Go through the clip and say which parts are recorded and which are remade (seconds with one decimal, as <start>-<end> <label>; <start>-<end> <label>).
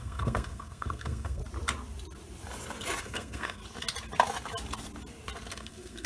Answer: 0.0-1.4 remade; 1.4-3.0 recorded; 3.0-3.6 remade; 3.6-5.5 recorded; 5.5-6.1 remade